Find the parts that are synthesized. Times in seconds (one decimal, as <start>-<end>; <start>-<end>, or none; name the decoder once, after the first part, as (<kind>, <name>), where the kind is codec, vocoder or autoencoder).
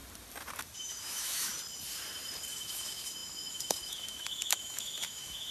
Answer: 0.6-1.5 (autoencoder, DAC-VAE); 2.5-5.5